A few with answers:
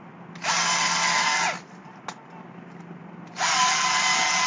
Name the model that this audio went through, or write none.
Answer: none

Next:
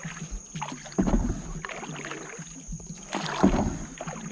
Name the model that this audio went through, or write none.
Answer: none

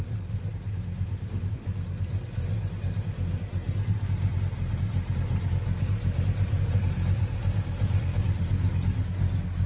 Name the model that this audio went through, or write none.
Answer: vocoder, BigVGAN v2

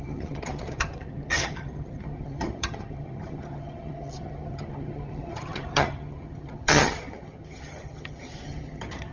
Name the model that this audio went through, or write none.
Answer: vocoder, HiFi-GAN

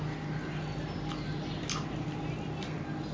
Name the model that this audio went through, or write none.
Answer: none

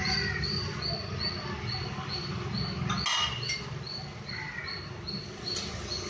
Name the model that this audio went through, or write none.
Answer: none